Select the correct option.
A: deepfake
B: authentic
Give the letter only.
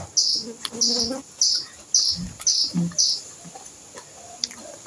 B